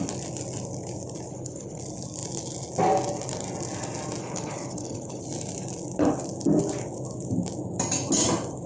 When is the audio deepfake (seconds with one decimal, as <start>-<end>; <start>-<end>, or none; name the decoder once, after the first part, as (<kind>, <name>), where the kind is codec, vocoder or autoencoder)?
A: 1.3-1.8 (codec, HILCodec); 4.2-5.2